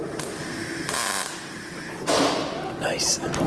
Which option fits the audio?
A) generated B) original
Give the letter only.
B